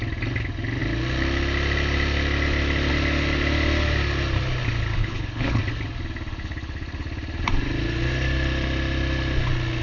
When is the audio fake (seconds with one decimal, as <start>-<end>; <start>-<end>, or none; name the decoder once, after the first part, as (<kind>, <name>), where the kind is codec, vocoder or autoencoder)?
5.0-5.6 (codec, HILCodec)